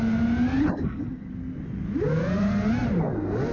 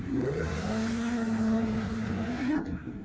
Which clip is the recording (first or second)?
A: first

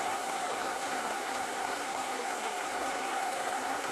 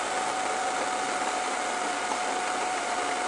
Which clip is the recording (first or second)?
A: second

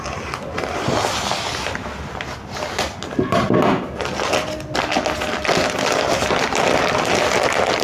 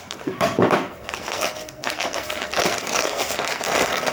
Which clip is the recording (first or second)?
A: first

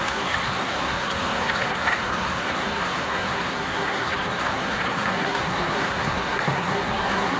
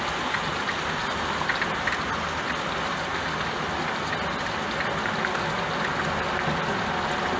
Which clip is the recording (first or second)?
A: second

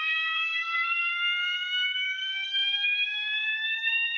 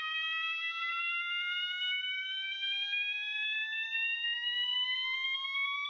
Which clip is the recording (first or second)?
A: second